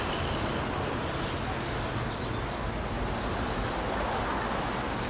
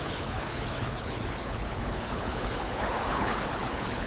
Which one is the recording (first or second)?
first